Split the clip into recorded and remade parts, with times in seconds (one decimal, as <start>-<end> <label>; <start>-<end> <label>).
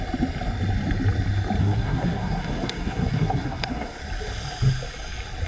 0.0-1.6 recorded; 1.6-4.0 remade; 4.0-5.5 recorded